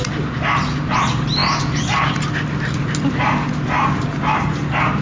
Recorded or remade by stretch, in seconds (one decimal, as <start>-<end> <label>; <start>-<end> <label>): 0.0-5.0 recorded